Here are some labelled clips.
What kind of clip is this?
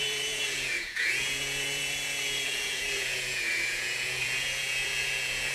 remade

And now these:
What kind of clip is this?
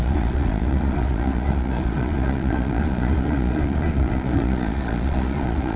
remade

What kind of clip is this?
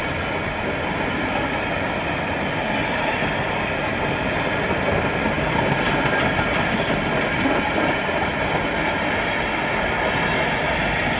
recorded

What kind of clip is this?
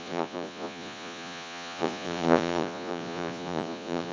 remade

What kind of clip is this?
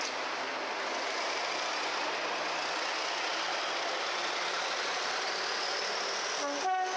recorded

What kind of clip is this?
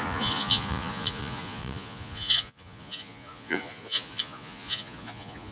remade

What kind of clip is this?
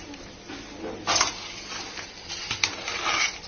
recorded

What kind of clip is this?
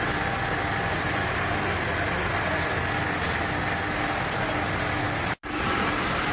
recorded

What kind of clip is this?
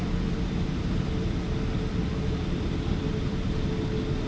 recorded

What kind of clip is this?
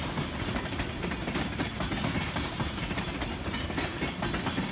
recorded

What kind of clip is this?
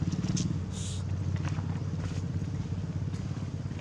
recorded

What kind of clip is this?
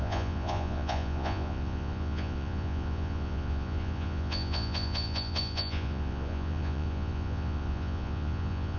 remade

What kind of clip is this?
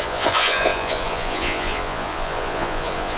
remade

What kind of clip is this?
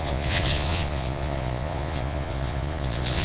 remade